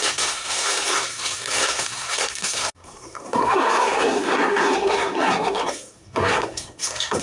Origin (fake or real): fake